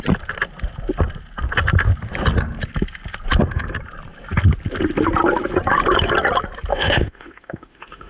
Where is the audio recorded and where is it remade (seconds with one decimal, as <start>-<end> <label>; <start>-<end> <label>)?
0.0-6.7 recorded; 6.7-8.1 remade